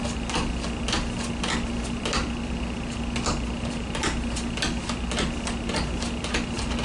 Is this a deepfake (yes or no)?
no